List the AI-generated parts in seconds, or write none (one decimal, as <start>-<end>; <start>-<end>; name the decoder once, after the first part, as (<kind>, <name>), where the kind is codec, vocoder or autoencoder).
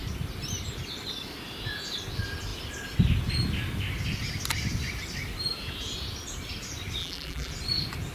7.0-7.5 (vocoder, BigVGAN v2)